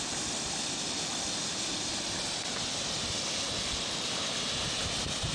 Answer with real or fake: real